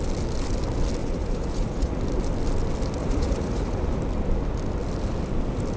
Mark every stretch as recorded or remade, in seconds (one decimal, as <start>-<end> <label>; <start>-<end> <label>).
0.0-1.0 recorded; 1.0-2.0 remade; 2.0-3.0 recorded; 3.0-4.0 remade; 4.0-5.8 recorded